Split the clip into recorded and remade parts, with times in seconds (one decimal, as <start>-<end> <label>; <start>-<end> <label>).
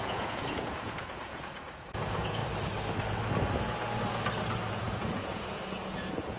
0.0-2.4 remade; 2.4-4.7 recorded; 4.7-6.4 remade